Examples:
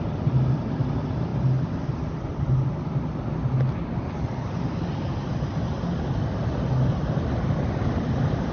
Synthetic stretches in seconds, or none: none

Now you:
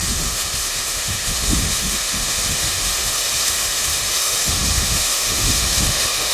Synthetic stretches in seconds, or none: 0.0-6.3 (autoencoder, DAC-VAE)

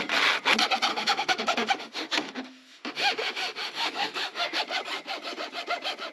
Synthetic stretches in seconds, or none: 0.9-4.6 (autoencoder, DAC-VAE)

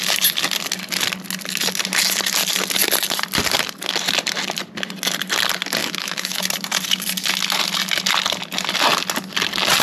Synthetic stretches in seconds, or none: 5.8-6.4 (autoencoder, DAC-VAE)

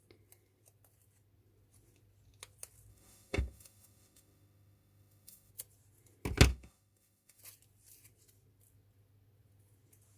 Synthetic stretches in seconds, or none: 2.9-5.5 (autoencoder, DAC-VAE); 6.5-7.4

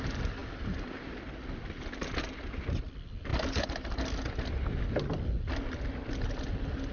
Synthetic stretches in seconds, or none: none